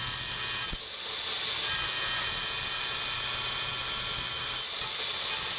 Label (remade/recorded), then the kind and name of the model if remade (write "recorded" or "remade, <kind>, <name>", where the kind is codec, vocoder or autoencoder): recorded